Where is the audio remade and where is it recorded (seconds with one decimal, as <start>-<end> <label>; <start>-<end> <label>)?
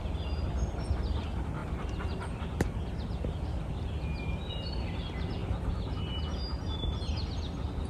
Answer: 0.0-7.9 recorded